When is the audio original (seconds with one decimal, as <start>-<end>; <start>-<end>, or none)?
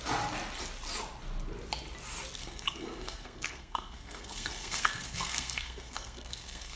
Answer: 0.0-2.4